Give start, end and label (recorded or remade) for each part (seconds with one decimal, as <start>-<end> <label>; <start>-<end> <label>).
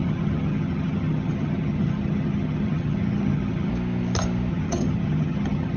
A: 0.0-3.7 remade; 3.7-4.5 recorded; 4.5-5.8 remade